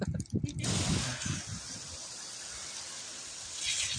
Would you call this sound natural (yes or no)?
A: yes